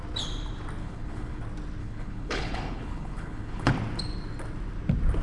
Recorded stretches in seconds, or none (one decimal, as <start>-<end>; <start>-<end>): 0.0-0.8; 1.4-1.8; 3.7-5.2